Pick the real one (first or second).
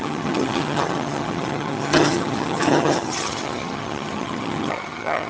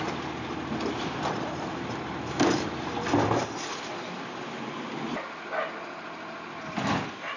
second